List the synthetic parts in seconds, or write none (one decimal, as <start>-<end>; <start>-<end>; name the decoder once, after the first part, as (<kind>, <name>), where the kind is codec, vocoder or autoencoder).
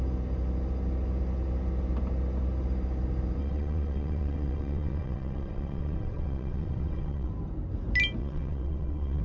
3.4-7.3 (vocoder, WaveNeXt); 8.2-9.2